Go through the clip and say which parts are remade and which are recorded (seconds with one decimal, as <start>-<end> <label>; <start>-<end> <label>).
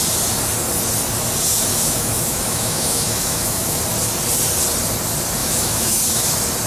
0.0-1.7 recorded; 1.7-3.8 remade; 3.8-5.4 recorded; 5.4-6.0 remade; 6.0-6.7 recorded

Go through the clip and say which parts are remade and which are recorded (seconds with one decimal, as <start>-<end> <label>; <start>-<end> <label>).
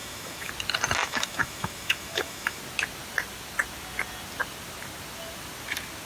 0.0-0.5 remade; 0.5-1.0 recorded; 1.0-2.6 remade; 2.6-6.1 recorded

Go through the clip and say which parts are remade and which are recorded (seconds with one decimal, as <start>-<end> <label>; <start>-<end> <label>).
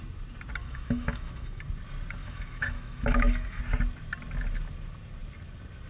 0.0-0.6 recorded; 0.6-1.6 remade; 1.6-2.2 recorded; 2.2-3.6 remade; 3.6-5.9 recorded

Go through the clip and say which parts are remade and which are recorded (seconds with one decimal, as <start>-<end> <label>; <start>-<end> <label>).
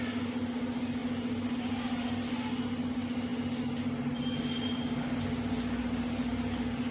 0.0-6.9 recorded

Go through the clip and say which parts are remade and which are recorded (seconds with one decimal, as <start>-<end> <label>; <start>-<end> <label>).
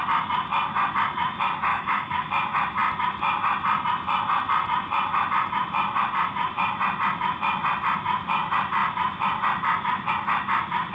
0.0-1.7 recorded; 1.7-2.3 remade; 2.3-10.9 recorded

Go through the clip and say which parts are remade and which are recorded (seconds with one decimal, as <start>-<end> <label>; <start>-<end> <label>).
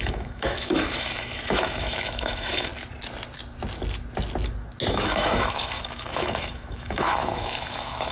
0.0-2.7 remade; 2.7-4.9 recorded; 4.9-8.1 remade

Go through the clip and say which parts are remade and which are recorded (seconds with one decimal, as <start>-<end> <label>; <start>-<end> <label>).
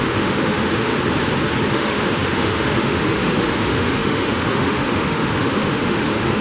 0.0-0.9 remade; 0.9-1.7 recorded; 1.7-6.4 remade